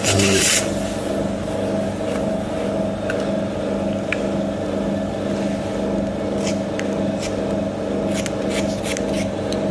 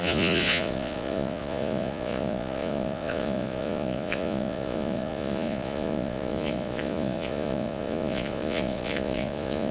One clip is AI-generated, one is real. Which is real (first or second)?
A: first